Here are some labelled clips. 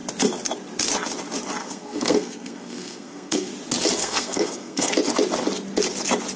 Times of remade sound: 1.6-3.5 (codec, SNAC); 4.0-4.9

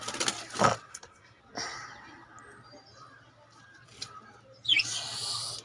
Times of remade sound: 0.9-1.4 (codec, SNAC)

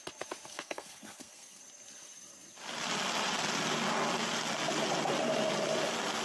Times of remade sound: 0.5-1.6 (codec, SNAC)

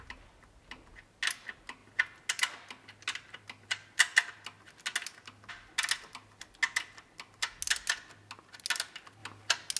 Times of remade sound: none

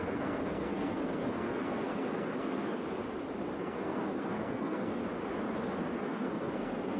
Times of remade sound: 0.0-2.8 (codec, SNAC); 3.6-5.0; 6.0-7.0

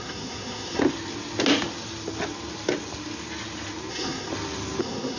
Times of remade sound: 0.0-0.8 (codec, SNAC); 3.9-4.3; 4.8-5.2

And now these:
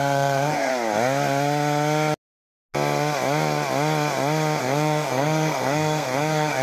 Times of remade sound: 0.0-0.7 (codec, SNAC); 4.6-6.6

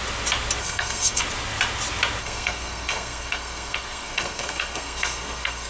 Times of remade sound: 0.6-1.2 (codec, SNAC); 2.2-5.7